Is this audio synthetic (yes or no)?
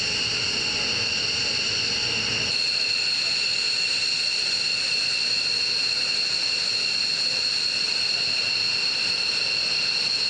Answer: no